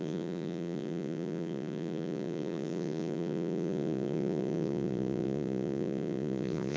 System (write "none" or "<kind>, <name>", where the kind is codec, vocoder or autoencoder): vocoder, Vocos